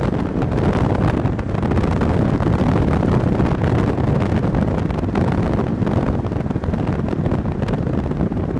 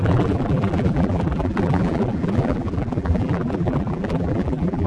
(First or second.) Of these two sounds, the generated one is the second